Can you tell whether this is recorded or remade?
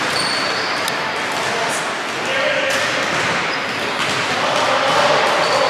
recorded